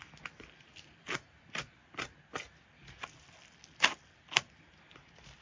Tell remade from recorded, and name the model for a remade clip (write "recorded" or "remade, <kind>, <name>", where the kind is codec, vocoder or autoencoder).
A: recorded